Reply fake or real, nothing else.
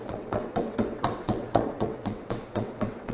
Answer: fake